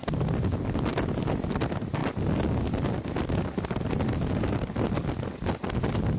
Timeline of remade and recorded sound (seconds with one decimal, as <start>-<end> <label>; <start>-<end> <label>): 0.0-6.2 recorded